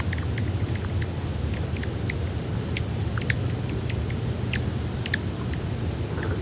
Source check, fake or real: real